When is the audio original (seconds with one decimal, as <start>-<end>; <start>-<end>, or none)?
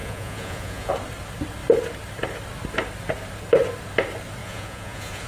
0.9-4.4